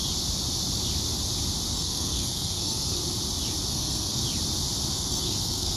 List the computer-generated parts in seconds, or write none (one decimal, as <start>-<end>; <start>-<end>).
1.7-3.0; 3.7-4.2; 4.9-5.8